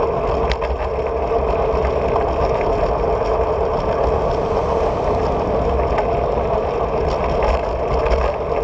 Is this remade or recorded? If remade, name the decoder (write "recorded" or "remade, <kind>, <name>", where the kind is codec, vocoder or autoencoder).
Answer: recorded